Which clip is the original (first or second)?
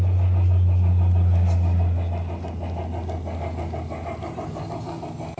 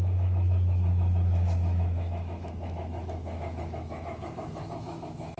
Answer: first